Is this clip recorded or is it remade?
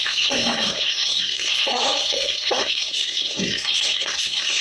remade